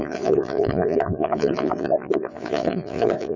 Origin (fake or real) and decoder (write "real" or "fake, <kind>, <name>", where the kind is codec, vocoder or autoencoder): fake, vocoder, Vocos